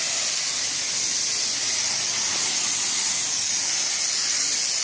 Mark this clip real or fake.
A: real